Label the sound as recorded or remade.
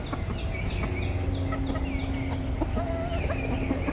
recorded